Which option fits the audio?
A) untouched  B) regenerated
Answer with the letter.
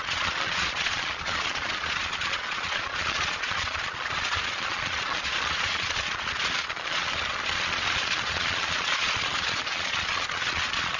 B